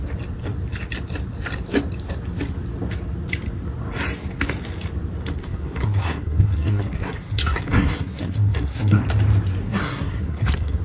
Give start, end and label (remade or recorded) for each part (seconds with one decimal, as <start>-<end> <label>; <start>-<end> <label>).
0.0-5.4 recorded; 5.4-9.0 remade; 9.0-9.6 recorded; 9.6-10.8 remade

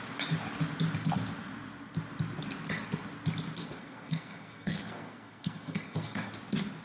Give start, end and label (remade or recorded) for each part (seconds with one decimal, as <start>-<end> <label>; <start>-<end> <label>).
0.0-3.6 recorded; 3.6-6.3 remade; 6.3-6.8 recorded

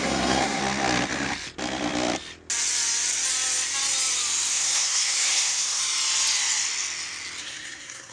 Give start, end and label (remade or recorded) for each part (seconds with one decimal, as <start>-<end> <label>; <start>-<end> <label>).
0.0-0.6 remade; 0.6-4.5 recorded; 4.5-5.8 remade; 5.8-7.4 recorded; 7.4-8.1 remade

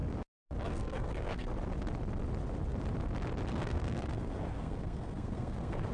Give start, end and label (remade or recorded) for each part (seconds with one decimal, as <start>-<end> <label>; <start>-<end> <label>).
0.0-0.7 recorded; 0.7-1.5 remade; 1.5-3.5 recorded; 3.5-5.9 remade

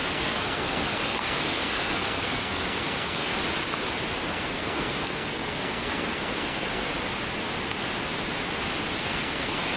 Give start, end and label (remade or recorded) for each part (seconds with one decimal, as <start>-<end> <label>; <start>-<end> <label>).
0.0-3.3 remade; 3.3-4.3 recorded; 4.3-6.9 remade; 6.9-9.0 recorded; 9.0-9.8 remade

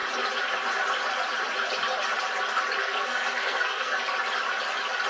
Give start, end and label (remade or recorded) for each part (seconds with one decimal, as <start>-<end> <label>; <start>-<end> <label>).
0.0-2.8 recorded; 2.8-3.9 remade; 3.9-5.1 recorded

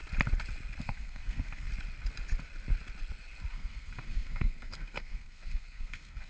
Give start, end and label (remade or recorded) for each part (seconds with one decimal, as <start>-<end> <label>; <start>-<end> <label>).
0.0-0.8 recorded; 0.8-1.7 remade; 1.7-3.5 recorded; 3.5-6.3 remade

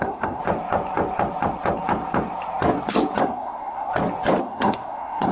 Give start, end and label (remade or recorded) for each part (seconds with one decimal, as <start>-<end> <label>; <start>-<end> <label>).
0.0-0.4 remade; 0.4-3.2 recorded; 3.2-3.9 remade; 3.9-4.4 recorded; 4.4-5.3 remade